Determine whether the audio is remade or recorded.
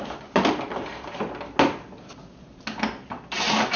recorded